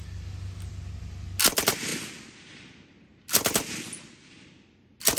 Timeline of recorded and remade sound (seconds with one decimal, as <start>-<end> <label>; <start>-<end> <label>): 0.0-5.2 recorded